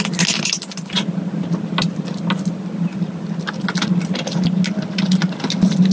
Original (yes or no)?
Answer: yes